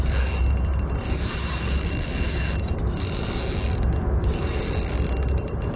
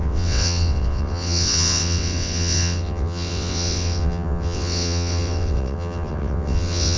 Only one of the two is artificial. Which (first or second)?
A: second